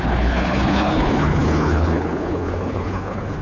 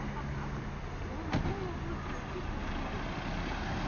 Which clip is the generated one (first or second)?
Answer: first